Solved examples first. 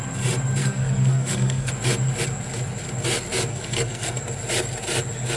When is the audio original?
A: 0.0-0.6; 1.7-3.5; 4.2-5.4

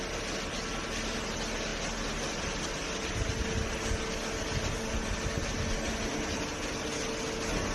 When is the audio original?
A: 0.0-7.7